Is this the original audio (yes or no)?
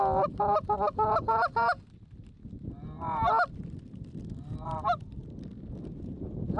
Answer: yes